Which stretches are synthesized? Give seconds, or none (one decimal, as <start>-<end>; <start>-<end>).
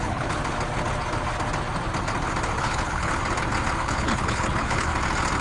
0.0-0.4; 2.6-3.1; 3.8-4.9